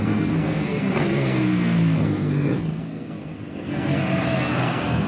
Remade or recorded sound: remade